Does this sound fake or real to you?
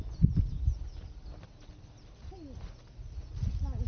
real